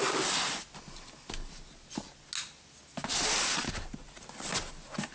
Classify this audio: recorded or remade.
recorded